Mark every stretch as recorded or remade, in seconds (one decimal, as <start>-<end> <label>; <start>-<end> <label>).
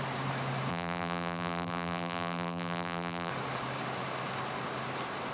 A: 0.0-0.7 recorded; 0.7-3.3 remade; 3.3-5.3 recorded